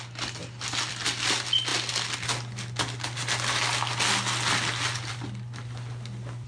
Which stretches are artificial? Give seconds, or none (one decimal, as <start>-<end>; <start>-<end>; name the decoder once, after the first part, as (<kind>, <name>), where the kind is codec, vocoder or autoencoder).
none